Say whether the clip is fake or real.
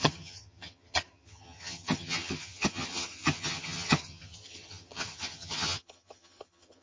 fake